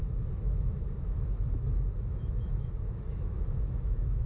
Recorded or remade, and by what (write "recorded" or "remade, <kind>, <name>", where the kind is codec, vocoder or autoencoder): remade, autoencoder, DAC-VAE